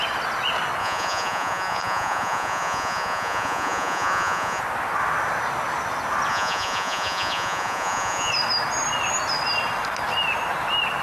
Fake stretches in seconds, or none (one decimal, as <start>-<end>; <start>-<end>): 0.8-4.6; 6.3-8.3